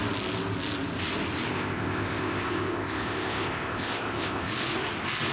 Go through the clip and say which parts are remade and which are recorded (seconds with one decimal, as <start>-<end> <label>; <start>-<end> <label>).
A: 0.0-1.5 recorded; 1.5-4.5 remade; 4.5-5.3 recorded